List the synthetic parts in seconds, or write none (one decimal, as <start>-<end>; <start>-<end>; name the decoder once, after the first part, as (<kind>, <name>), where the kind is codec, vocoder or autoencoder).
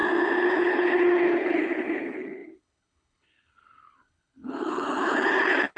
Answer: 0.5-5.8 (codec, HILCodec)